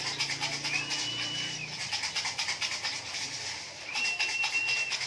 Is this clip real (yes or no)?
yes